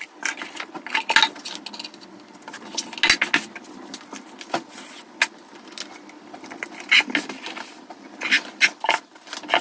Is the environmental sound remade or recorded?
recorded